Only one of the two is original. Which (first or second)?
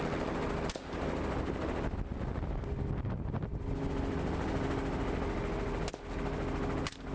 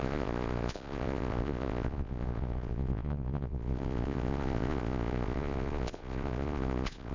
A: first